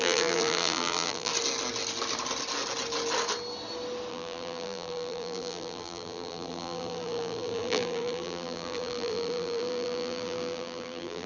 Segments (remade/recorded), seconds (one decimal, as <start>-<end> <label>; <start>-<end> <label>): 0.0-1.3 remade; 1.3-4.1 recorded; 4.1-11.3 remade